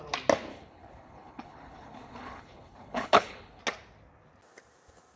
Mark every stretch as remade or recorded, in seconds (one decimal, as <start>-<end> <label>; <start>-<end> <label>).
0.0-0.5 recorded; 0.5-3.6 remade; 3.6-5.2 recorded